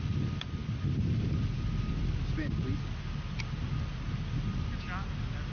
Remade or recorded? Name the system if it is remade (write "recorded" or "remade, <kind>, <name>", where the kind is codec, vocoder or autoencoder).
recorded